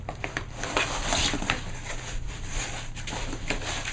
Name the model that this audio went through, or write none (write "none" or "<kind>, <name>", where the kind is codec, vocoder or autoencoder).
none